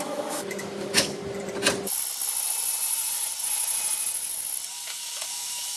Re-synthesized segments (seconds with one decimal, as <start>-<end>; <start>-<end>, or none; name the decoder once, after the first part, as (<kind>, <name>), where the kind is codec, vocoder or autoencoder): 0.0-1.2 (autoencoder, DAC-VAE); 4.7-5.8